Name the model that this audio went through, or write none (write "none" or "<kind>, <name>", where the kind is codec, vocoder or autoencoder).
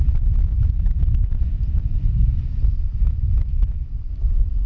none